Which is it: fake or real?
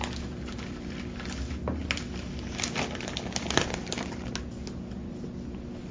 real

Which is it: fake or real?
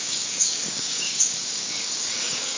fake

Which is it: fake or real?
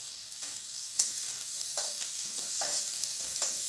fake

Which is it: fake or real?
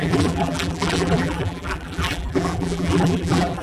fake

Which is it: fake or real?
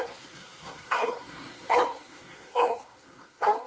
fake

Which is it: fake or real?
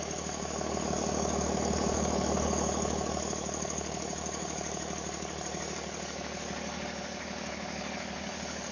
fake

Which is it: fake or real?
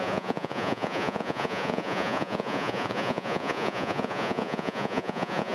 fake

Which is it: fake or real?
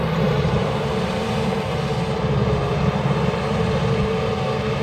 fake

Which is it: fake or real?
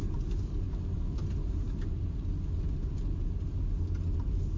real